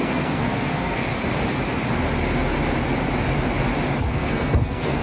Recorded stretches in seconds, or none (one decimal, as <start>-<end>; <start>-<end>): 1.1-4.1